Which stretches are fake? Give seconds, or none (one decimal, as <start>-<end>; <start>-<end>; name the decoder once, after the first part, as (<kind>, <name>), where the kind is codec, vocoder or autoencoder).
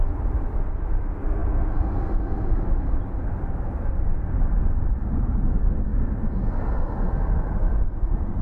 4.1-4.8 (vocoder, BigVGAN v2)